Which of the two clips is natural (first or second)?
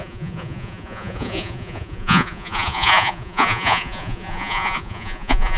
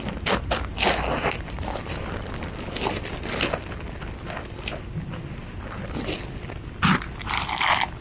second